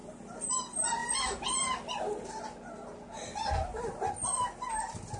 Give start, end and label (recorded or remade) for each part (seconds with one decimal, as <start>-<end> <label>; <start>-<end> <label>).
0.0-5.2 recorded